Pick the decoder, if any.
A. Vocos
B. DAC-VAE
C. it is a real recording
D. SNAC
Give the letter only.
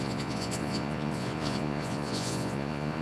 A